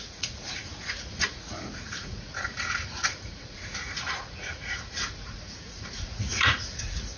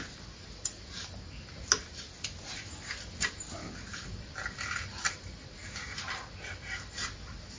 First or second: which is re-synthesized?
first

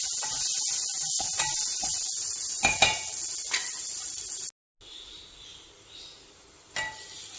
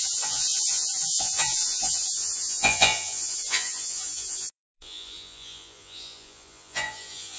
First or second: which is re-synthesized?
second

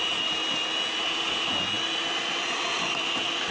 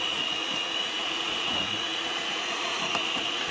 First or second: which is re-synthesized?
second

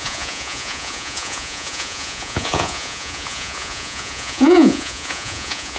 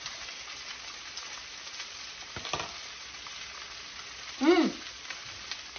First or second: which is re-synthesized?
first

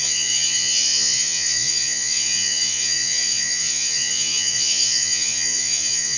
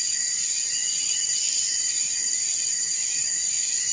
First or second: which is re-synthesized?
first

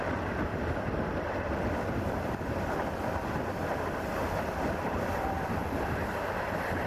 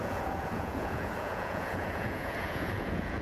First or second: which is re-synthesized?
second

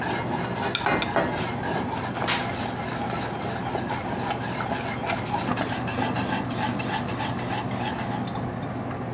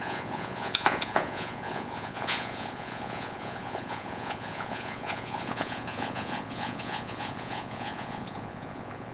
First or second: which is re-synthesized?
second